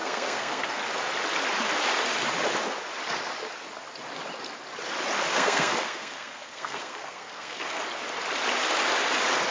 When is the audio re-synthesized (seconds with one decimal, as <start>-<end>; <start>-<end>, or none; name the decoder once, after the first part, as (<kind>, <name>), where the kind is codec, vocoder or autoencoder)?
0.0-0.8 (codec, SNAC); 5.3-7.8